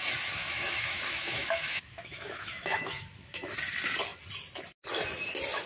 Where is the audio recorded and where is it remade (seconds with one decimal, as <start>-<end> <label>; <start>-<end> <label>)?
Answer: 0.0-0.4 recorded; 0.4-3.5 remade; 3.5-5.7 recorded